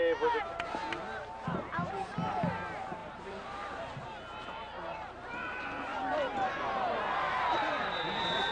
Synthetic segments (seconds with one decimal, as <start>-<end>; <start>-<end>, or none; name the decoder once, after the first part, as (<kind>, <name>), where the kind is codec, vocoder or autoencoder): 3.0-4.2 (vocoder, BigVGAN v2); 5.9-8.5